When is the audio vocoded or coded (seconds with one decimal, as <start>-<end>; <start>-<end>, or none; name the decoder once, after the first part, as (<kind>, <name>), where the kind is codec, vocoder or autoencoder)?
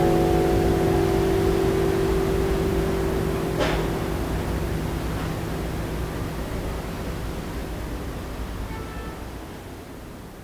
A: 7.6-9.1 (vocoder, BigVGAN v2)